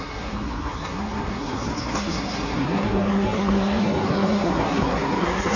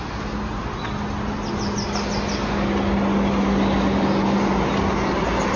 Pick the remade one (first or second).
first